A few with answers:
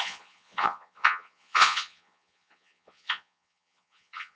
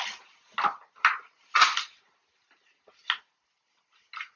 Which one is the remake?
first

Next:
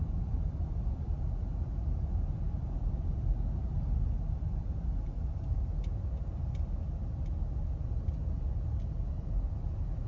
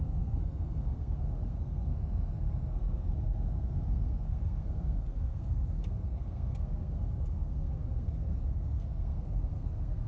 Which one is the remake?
second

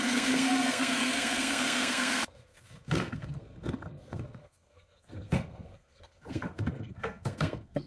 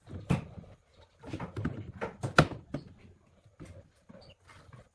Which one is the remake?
first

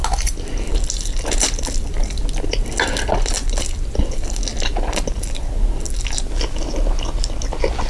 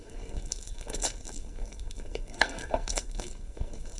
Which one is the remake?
second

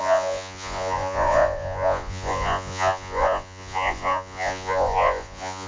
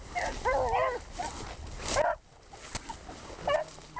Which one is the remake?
first